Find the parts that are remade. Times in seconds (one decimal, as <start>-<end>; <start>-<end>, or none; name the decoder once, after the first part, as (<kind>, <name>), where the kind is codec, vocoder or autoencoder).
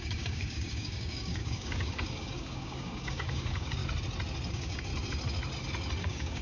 0.0-3.8 (codec, DAC); 4.5-4.9; 6.0-6.4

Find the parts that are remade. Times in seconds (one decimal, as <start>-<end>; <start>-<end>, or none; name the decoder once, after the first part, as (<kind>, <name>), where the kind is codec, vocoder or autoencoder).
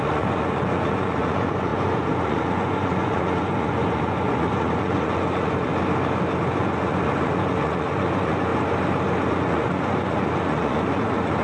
0.0-5.7 (vocoder, Vocos); 6.4-8.5; 9.3-11.4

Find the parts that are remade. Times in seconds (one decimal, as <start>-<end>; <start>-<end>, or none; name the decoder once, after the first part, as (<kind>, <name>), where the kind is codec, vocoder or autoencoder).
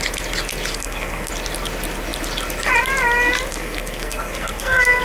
0.7-1.3 (codec, SNAC); 3.5-5.0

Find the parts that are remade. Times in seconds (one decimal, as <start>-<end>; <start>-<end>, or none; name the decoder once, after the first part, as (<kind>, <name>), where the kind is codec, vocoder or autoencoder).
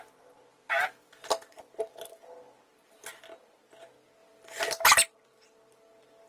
0.5-1.2 (vocoder, BigVGAN v2)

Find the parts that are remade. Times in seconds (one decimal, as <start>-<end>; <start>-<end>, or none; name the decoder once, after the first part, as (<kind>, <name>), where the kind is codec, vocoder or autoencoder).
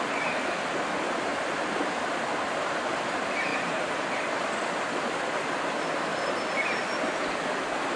1.3-2.3 (vocoder, BigVGAN v2); 3.5-4.1